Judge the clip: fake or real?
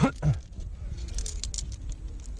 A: real